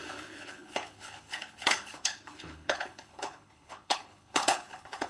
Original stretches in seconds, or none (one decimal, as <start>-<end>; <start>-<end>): none